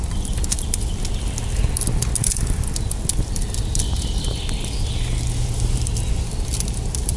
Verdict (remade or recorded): recorded